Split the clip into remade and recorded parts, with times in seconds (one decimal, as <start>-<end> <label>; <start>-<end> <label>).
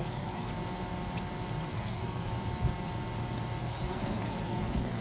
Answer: 0.0-0.5 remade; 0.5-1.7 recorded; 1.7-2.3 remade; 2.3-3.6 recorded; 3.6-5.0 remade